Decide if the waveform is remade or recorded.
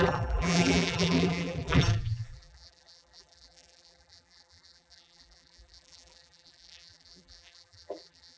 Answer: remade